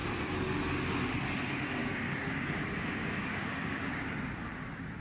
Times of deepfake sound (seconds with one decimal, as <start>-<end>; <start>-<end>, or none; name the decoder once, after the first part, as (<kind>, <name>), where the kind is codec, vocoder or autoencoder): 1.8-3.9 (codec, DAC)